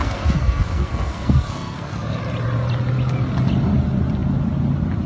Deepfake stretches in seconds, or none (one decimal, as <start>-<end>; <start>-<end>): 0.0-2.2